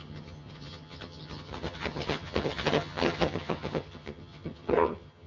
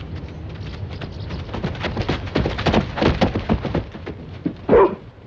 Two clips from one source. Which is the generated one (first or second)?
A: first